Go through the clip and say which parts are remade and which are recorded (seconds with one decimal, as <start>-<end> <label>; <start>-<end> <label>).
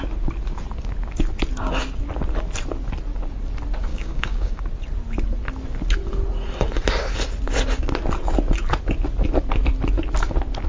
0.0-3.9 recorded; 3.9-4.6 remade; 4.6-10.7 recorded